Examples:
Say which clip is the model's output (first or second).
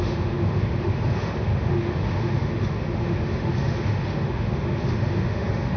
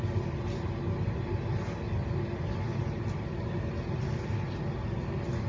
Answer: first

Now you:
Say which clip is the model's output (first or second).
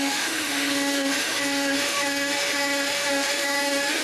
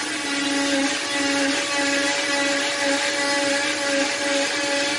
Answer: first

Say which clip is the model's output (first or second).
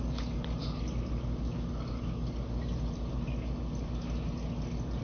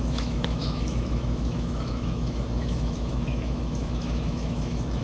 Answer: second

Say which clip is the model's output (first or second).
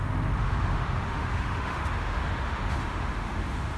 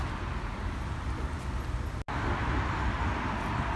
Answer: first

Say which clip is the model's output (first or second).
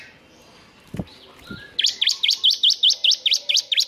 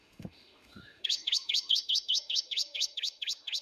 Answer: second